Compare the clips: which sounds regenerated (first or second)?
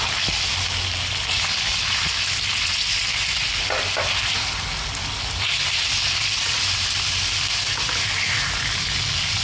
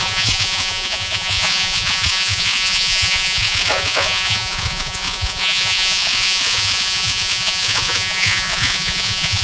second